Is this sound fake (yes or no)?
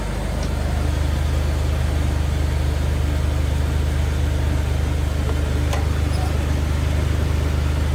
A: no